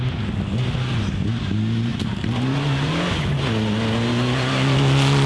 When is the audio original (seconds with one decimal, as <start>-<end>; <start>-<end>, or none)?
0.0-5.3